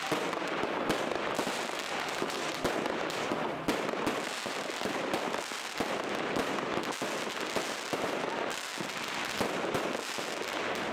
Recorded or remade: recorded